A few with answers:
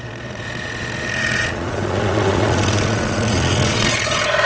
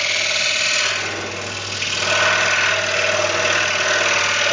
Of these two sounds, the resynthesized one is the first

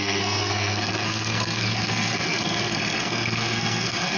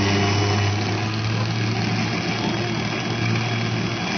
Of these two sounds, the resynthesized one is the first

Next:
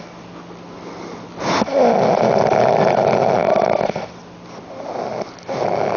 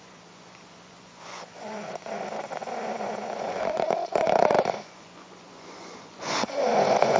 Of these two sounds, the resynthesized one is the second